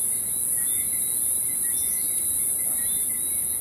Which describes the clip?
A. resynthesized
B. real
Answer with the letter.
B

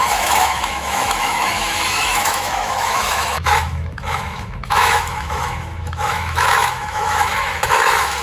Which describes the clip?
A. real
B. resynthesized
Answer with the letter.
B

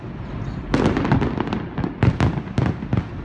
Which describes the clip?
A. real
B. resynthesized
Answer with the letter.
A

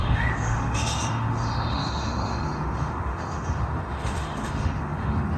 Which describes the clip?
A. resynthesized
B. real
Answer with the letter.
A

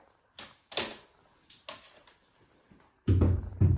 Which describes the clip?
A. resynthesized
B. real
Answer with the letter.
B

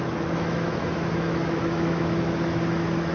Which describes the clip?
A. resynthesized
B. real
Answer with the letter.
A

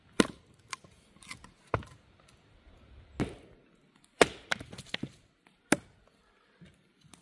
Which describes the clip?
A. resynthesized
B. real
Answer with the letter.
B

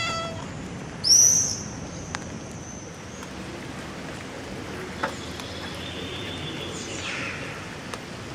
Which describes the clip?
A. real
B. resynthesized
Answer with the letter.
A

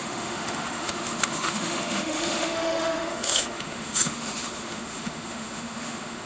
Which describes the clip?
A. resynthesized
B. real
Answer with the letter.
A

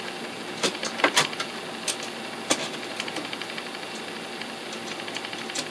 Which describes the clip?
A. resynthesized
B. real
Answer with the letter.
B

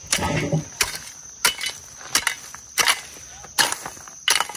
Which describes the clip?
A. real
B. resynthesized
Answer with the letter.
A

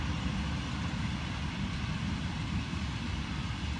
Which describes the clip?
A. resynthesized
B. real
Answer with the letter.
B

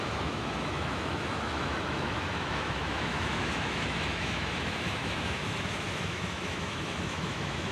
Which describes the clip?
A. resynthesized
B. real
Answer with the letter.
A